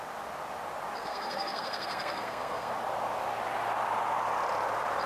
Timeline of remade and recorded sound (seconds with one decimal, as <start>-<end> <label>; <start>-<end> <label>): 0.0-1.0 recorded; 1.0-2.7 remade; 2.7-5.1 recorded